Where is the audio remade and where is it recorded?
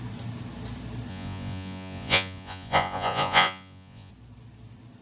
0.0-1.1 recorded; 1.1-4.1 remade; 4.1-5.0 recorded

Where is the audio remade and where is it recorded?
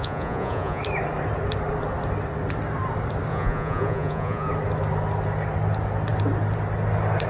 0.0-0.8 remade; 0.8-3.3 recorded; 3.3-4.5 remade; 4.5-7.3 recorded